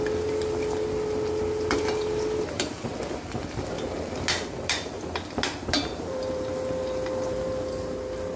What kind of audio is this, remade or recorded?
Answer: recorded